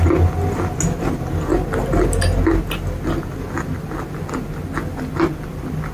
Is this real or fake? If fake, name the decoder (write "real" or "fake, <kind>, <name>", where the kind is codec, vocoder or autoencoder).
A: real